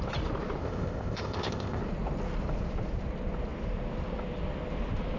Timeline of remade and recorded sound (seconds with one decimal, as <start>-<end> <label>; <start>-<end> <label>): 0.0-0.6 recorded; 0.6-1.8 remade; 1.8-5.2 recorded